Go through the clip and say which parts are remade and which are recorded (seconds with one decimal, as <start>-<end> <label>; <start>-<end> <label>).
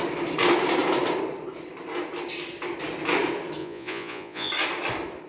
0.0-3.6 recorded; 3.6-4.5 remade; 4.5-5.3 recorded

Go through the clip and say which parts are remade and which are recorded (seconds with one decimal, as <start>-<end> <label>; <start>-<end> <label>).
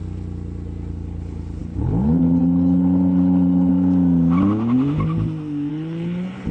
0.0-0.9 recorded; 0.9-3.7 remade; 3.7-5.7 recorded; 5.7-6.5 remade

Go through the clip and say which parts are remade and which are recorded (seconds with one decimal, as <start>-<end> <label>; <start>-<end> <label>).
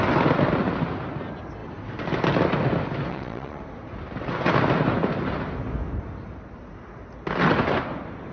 0.0-3.1 recorded; 3.1-3.6 remade; 3.6-8.3 recorded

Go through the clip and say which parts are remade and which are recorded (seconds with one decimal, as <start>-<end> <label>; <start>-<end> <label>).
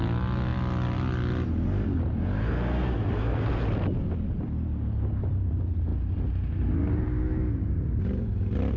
0.0-8.8 recorded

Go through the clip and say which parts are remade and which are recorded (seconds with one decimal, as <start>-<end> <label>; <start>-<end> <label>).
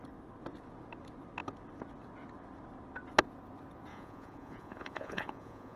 0.0-3.9 recorded; 3.9-5.8 remade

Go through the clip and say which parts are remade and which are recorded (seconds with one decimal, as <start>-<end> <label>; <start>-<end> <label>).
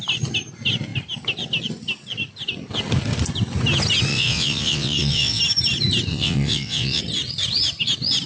0.0-4.1 recorded; 4.1-5.4 remade; 5.4-6.1 recorded; 6.1-7.0 remade; 7.0-8.3 recorded